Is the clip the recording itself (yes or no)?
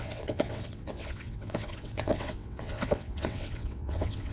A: no